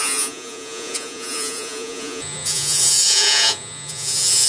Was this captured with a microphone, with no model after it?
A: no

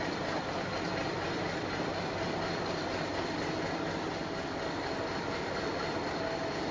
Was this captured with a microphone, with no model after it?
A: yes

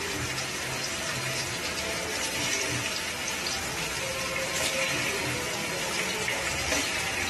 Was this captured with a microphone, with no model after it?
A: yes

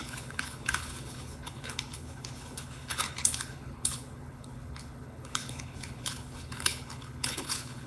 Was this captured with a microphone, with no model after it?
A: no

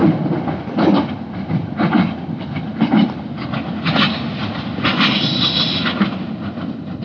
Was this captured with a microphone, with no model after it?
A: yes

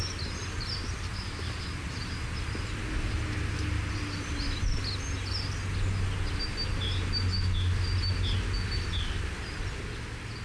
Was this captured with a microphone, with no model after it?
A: yes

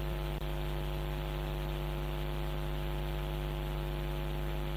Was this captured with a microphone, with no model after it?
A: yes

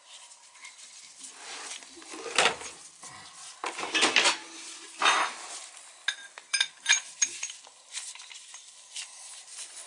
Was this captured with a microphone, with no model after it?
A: yes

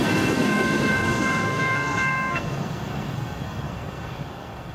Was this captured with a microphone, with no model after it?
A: no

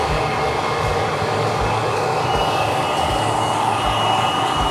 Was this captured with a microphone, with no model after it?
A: no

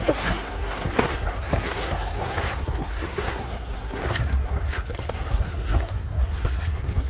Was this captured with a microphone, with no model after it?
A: no